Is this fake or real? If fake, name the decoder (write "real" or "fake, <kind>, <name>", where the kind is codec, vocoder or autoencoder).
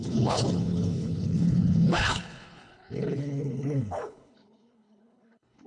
fake, codec, HILCodec